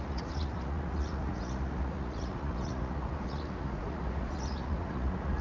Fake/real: fake